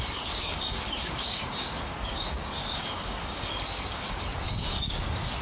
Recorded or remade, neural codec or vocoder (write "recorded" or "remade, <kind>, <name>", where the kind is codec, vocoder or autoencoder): remade, codec, DAC